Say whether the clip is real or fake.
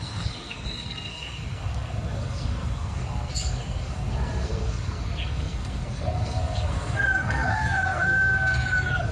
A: fake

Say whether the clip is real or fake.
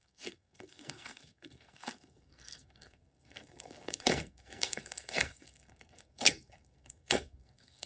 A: fake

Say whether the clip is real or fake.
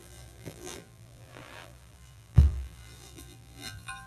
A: fake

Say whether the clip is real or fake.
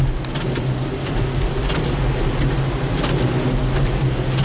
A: real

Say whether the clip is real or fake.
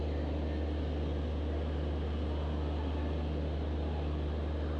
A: real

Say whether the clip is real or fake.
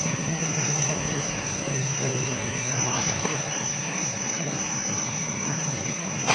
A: fake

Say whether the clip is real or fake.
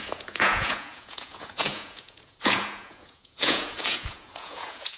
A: fake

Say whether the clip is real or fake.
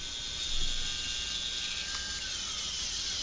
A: real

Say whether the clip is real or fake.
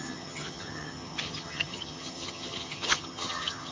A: fake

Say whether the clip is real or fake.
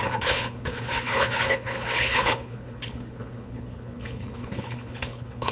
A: fake